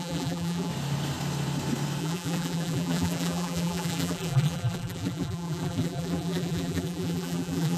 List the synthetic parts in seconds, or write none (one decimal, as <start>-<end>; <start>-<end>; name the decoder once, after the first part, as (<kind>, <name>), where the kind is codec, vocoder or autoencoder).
0.0-0.7 (vocoder, BigVGAN v2); 2.0-7.8